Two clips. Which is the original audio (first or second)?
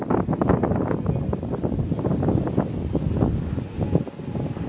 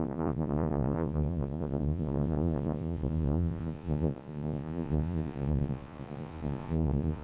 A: first